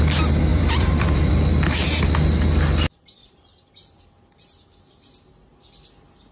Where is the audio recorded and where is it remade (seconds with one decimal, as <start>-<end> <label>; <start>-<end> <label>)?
0.0-0.5 recorded; 0.5-1.3 remade; 1.3-3.2 recorded; 3.2-4.0 remade; 4.0-6.3 recorded